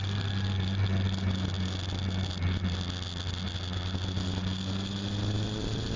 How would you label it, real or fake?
real